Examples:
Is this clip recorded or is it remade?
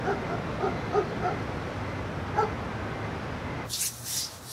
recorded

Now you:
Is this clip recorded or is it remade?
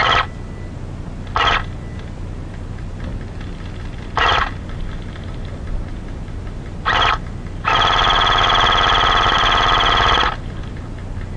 recorded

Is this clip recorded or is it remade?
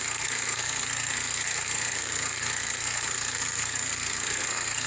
remade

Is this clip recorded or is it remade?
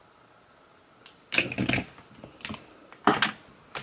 recorded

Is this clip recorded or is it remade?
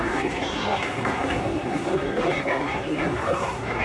remade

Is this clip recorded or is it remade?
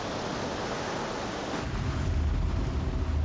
recorded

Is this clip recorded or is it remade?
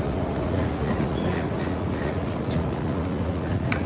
remade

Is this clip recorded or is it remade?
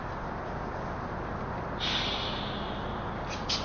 recorded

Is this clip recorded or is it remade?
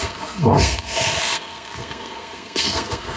remade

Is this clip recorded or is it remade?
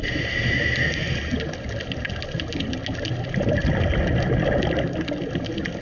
recorded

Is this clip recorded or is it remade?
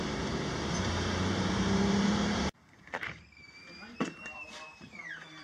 remade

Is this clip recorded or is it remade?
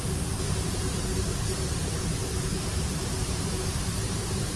remade